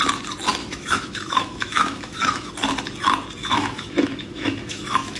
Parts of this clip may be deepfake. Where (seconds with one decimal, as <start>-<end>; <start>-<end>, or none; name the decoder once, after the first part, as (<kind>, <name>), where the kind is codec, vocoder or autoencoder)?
0.6-2.5 (autoencoder, DAC-VAE); 3.4-5.2